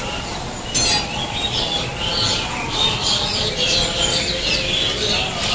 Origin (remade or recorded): recorded